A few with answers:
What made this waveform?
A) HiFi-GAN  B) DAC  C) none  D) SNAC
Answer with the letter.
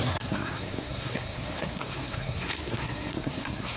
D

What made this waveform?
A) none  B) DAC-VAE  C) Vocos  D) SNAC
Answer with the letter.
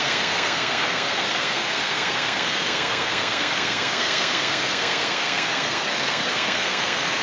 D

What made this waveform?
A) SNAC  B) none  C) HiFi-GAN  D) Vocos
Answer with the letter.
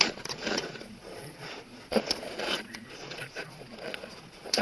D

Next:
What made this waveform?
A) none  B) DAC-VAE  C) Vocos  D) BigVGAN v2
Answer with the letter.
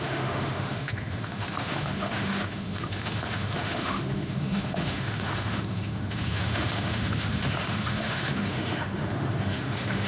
B